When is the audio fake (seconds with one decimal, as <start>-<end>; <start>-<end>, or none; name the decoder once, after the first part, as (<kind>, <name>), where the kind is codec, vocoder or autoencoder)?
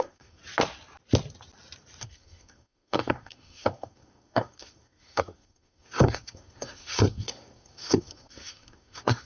0.0-0.4 (codec, SNAC); 2.0-9.3